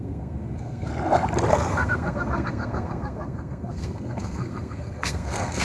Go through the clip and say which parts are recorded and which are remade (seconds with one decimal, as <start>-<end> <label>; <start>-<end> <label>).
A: 0.0-0.9 remade; 0.9-1.5 recorded; 1.5-5.6 remade